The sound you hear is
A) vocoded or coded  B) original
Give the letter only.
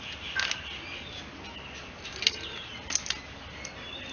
B